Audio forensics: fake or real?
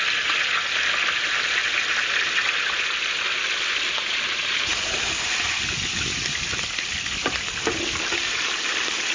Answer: real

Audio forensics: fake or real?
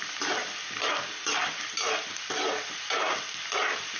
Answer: real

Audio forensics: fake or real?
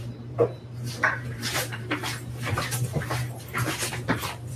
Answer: fake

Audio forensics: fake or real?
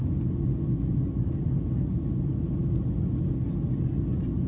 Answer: real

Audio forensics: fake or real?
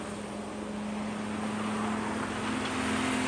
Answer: real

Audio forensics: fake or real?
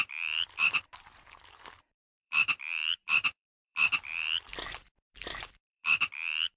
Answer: fake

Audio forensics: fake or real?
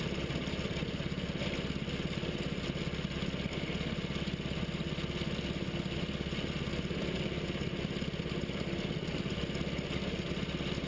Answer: real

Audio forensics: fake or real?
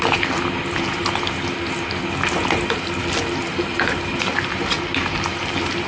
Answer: real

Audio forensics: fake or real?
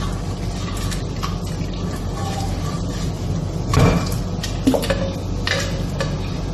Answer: real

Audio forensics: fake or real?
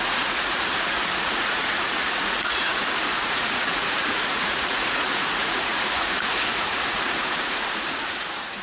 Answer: fake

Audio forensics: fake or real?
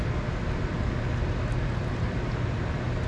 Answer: real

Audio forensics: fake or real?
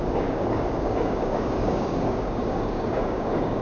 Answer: fake